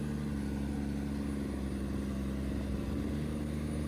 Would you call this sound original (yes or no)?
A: yes